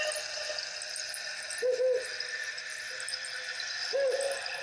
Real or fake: real